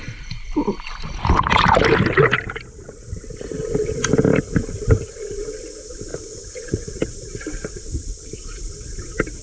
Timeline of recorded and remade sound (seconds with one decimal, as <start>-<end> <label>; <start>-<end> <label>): 0.0-6.1 recorded; 6.1-7.0 remade; 7.0-9.4 recorded